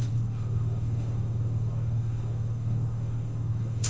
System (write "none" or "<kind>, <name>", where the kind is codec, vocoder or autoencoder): codec, DAC